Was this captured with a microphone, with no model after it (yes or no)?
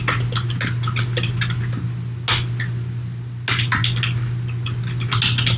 yes